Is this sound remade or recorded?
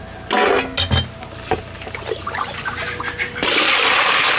recorded